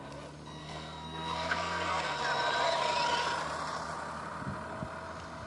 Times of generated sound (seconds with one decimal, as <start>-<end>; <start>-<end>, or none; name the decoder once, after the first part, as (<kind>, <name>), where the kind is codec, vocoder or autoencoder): 0.6-2.2 (codec, SNAC)